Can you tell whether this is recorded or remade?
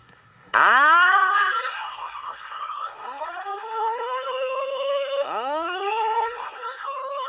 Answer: remade